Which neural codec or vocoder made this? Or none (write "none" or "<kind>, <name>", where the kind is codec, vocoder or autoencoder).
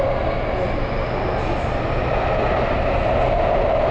none